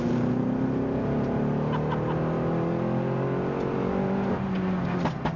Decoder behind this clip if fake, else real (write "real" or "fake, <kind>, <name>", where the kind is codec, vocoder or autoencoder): real